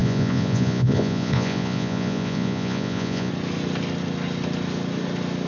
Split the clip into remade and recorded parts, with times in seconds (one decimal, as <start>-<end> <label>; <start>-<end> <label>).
0.0-3.3 remade; 3.3-5.5 recorded